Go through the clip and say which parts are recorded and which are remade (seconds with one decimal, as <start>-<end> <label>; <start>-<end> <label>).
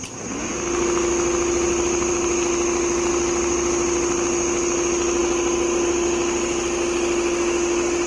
0.0-8.1 recorded